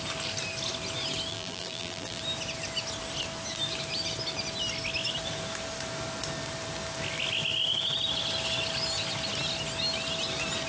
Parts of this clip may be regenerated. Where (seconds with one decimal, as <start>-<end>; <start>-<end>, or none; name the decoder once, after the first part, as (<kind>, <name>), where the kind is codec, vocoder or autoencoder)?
1.3-2.2 (vocoder, BigVGAN v2)